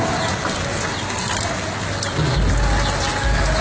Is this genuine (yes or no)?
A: yes